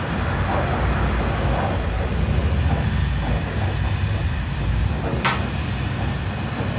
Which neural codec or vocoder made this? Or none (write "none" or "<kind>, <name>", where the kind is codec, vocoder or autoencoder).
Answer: none